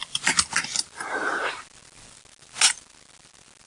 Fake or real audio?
real